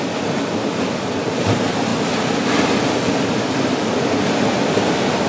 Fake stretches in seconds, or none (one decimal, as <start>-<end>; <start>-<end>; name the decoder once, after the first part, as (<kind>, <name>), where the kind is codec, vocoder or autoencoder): none